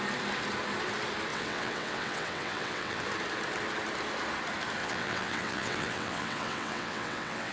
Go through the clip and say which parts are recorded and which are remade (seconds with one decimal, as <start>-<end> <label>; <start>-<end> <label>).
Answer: 0.0-1.3 recorded; 1.3-3.0 remade; 3.0-4.8 recorded; 4.8-7.5 remade